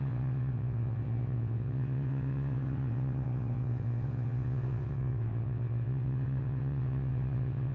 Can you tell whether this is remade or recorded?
remade